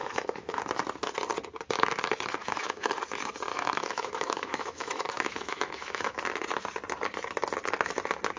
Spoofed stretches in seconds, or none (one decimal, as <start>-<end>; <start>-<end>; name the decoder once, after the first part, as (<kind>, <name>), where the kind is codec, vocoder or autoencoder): 0.0-0.6 (autoencoder, DAC-VAE); 2.4-2.9; 3.5-6.2